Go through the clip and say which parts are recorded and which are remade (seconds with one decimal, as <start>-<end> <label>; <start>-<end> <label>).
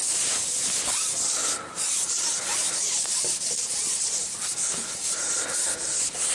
0.0-2.5 recorded; 2.5-3.4 remade; 3.4-3.8 recorded; 3.8-4.4 remade; 4.4-6.3 recorded